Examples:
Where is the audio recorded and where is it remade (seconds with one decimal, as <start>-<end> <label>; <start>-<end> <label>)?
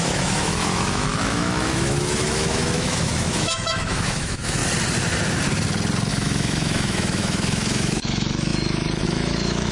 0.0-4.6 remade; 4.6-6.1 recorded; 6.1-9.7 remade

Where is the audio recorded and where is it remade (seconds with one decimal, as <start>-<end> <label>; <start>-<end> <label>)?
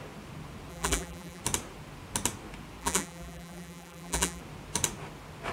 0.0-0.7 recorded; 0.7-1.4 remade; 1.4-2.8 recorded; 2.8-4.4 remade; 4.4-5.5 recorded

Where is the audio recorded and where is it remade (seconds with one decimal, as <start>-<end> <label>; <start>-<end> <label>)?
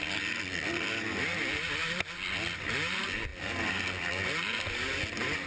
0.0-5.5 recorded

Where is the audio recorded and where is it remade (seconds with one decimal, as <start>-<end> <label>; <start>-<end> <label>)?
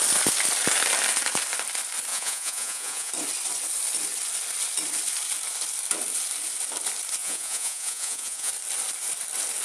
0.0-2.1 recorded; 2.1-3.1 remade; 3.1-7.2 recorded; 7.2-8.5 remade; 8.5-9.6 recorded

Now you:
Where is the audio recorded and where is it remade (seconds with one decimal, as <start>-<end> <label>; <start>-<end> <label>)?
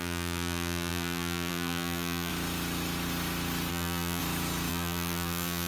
0.0-2.3 remade; 2.3-3.7 recorded; 3.7-4.2 remade; 4.2-4.7 recorded; 4.7-5.7 remade